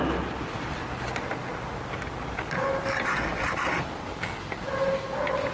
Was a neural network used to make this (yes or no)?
no